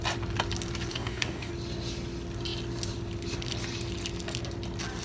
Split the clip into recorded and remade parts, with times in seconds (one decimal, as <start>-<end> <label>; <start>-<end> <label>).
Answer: 0.0-0.9 recorded; 0.9-1.5 remade; 1.5-5.0 recorded